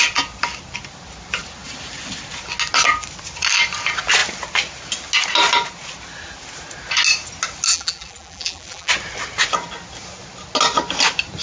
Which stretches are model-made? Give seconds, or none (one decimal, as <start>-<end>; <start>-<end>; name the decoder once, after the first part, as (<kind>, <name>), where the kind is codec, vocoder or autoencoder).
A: 7.7-8.9 (vocoder, BigVGAN v2)